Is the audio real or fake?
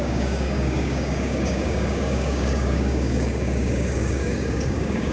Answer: fake